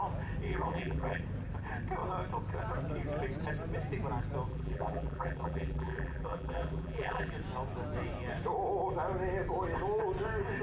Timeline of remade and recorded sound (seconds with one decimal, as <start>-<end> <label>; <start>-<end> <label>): 0.0-0.5 recorded; 0.5-1.2 remade; 1.2-4.5 recorded; 4.5-7.3 remade; 7.3-10.6 recorded